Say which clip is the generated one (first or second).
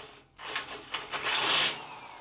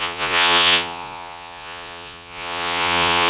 second